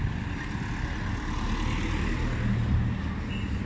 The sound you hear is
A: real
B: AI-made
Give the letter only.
A